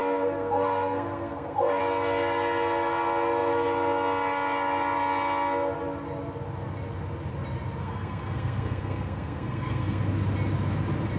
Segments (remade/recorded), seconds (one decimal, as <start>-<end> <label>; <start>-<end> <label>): 0.0-1.8 remade; 1.8-7.8 recorded; 7.8-10.0 remade; 10.0-11.2 recorded